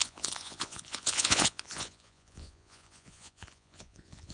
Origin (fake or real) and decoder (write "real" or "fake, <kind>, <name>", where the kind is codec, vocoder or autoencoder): fake, vocoder, Vocos